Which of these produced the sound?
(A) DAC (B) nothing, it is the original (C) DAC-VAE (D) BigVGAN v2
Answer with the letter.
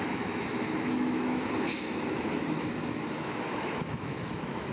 C